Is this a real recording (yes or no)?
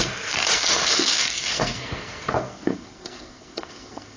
no